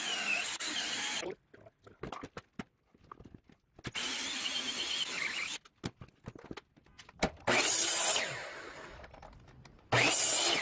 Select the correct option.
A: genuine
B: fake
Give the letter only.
A